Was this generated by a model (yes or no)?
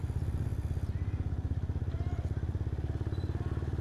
no